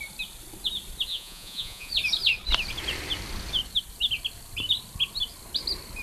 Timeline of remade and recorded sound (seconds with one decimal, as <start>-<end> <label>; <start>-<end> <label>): 0.0-1.1 recorded; 1.1-1.9 remade; 1.9-6.0 recorded